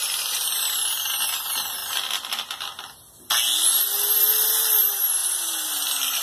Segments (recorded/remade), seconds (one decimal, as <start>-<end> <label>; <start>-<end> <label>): 0.0-6.2 recorded